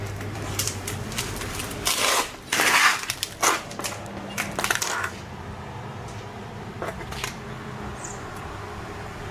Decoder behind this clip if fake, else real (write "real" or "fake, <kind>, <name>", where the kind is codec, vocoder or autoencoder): fake, vocoder, BigVGAN v2